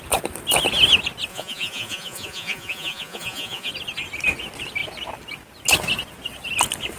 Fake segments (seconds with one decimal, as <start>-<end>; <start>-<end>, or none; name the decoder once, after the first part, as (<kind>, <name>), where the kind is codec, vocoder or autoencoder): 1.3-3.7 (vocoder, Vocos)